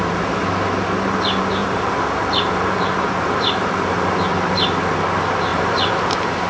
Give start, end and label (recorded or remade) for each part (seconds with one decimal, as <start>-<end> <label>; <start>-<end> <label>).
0.0-1.6 recorded; 1.6-4.0 remade; 4.0-5.5 recorded; 5.5-6.5 remade

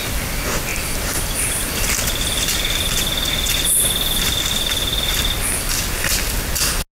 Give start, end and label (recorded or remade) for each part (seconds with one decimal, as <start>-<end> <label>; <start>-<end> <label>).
0.0-6.9 recorded

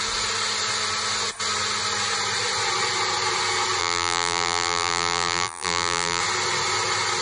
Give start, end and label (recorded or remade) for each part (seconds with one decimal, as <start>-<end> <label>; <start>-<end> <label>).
0.0-3.8 recorded; 3.8-6.2 remade; 6.2-7.2 recorded